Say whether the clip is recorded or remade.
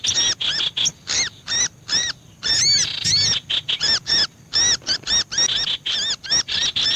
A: recorded